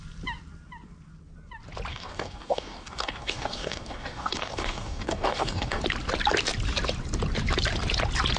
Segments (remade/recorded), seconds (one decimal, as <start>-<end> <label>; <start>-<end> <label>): 0.0-1.9 recorded; 1.9-5.8 remade; 5.8-8.4 recorded